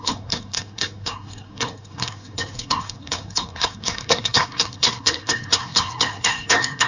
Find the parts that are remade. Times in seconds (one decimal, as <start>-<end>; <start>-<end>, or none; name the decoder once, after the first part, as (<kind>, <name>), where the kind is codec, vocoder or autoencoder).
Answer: 0.0-6.9 (codec, SNAC)